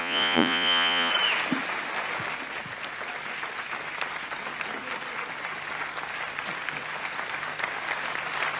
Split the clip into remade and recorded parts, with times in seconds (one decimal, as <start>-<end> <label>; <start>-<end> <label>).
0.0-1.1 remade; 1.1-8.6 recorded

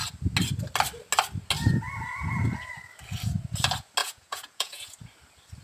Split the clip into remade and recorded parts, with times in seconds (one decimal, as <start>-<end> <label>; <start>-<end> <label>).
0.0-4.0 recorded; 4.0-5.0 remade; 5.0-5.6 recorded

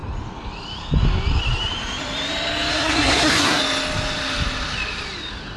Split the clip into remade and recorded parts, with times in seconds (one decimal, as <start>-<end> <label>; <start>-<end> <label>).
0.0-2.7 recorded; 2.7-3.6 remade; 3.6-5.6 recorded

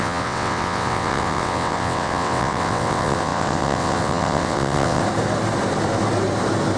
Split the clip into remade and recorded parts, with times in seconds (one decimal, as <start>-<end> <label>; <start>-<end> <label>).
0.0-5.0 remade; 5.0-6.8 recorded

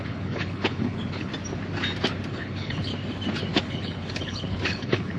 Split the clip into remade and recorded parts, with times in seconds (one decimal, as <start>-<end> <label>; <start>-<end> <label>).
0.0-1.3 remade; 1.3-2.3 recorded; 2.3-2.9 remade; 2.9-3.6 recorded; 3.6-5.2 remade

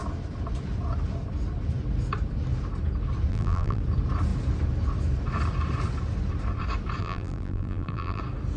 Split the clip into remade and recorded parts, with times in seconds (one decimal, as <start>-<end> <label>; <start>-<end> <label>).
0.0-3.3 recorded; 3.3-3.8 remade; 3.8-7.0 recorded; 7.0-8.2 remade; 8.2-8.6 recorded